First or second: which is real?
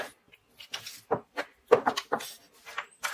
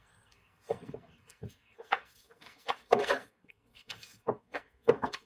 first